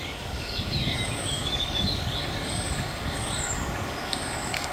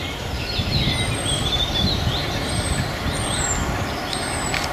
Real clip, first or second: second